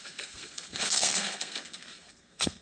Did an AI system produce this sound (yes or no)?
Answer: yes